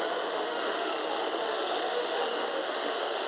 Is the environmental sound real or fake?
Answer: fake